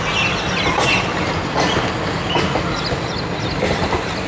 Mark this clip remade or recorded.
recorded